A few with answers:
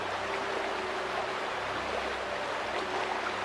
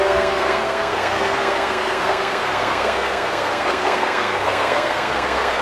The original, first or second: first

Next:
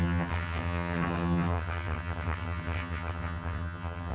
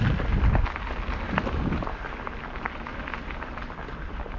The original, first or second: second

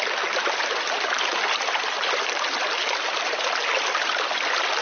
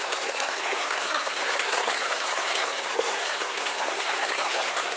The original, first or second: first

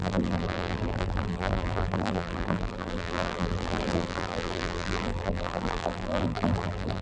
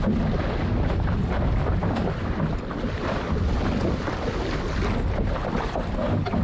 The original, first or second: second